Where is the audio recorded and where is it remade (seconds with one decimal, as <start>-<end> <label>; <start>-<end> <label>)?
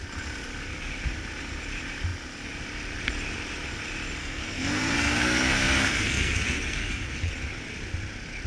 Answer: 0.0-4.2 recorded; 4.2-7.3 remade; 7.3-8.5 recorded